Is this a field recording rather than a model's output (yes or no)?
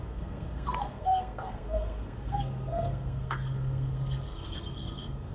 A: no